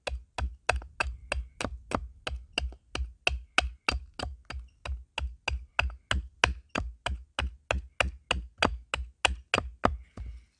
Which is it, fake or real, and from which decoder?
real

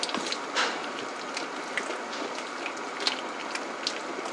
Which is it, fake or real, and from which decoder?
real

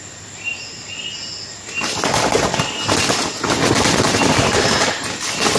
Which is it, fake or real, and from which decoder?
real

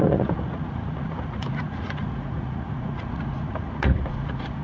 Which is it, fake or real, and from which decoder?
fake, vocoder, Vocos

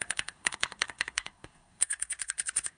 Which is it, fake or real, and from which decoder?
fake, codec, SNAC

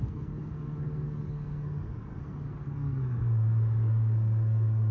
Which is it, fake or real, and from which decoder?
fake, codec, SNAC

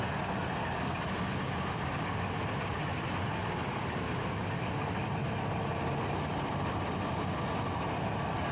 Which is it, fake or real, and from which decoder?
real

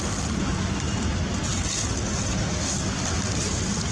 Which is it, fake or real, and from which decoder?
real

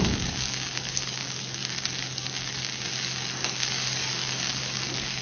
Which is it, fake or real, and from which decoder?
fake, codec, DAC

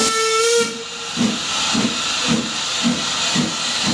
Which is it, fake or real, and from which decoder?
real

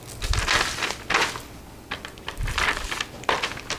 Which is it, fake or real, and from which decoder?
real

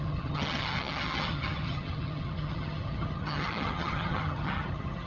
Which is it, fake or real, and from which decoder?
fake, vocoder, HiFi-GAN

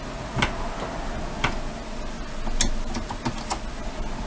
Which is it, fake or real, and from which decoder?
real